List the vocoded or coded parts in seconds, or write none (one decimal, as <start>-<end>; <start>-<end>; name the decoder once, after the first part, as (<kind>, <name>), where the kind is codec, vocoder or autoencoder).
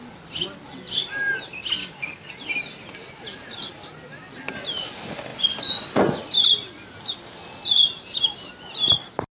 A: 1.8-2.3 (codec, DAC)